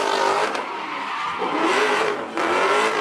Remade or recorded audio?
recorded